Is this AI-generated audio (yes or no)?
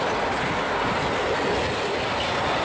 no